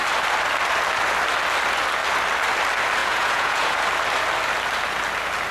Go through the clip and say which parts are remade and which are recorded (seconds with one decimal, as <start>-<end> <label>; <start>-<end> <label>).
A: 0.0-3.0 recorded; 3.0-3.8 remade; 3.8-5.5 recorded